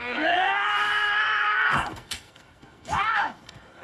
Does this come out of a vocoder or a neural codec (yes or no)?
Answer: yes